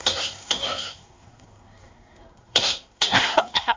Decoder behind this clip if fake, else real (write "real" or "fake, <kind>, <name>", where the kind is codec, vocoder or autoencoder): fake, codec, SNAC